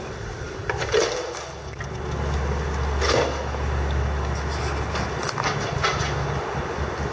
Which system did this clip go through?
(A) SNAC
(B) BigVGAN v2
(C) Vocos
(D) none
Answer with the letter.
D